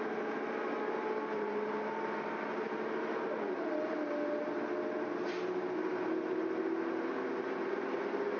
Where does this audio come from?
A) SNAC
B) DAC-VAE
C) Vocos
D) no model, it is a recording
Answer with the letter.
D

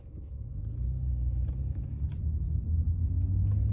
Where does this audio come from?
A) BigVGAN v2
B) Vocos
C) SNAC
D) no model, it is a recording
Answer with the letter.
D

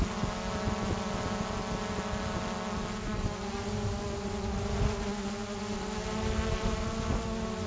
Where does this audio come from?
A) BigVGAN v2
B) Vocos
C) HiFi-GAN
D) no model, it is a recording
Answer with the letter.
D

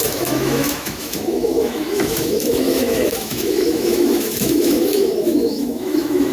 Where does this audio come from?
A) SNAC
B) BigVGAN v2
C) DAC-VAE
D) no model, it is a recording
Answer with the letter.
C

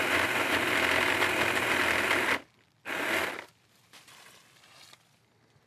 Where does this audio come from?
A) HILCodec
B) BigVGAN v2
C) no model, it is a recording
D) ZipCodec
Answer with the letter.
C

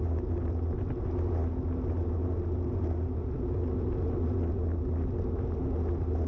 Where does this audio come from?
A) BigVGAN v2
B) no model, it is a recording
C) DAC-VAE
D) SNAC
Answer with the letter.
B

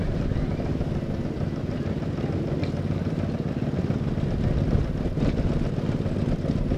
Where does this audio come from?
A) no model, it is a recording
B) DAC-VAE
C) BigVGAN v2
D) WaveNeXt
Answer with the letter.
A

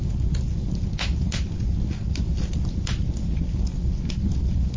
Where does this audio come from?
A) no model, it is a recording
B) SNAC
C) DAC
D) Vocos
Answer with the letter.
A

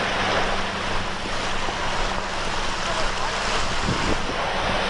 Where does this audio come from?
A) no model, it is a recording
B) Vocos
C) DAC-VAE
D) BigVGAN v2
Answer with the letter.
A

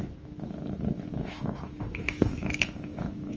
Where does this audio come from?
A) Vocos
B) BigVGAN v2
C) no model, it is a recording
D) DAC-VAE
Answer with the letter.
D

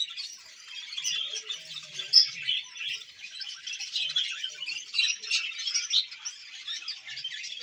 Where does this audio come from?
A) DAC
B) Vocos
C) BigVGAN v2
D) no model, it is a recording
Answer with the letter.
D